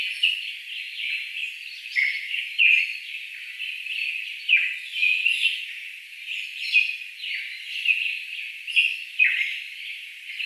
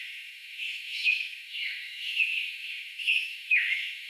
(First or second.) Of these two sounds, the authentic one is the first